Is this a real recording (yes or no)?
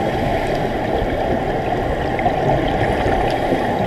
yes